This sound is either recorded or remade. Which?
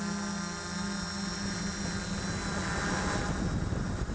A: recorded